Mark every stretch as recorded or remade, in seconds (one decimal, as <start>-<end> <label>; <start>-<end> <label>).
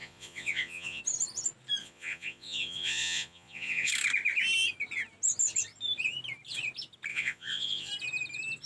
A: 0.0-1.0 remade; 1.0-1.8 recorded; 1.8-3.9 remade; 3.9-7.1 recorded; 7.1-7.9 remade; 7.9-8.7 recorded